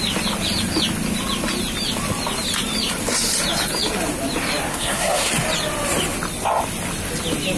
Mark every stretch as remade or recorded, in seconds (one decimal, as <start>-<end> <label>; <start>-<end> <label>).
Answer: 0.0-4.7 recorded; 4.7-5.3 remade; 5.3-7.6 recorded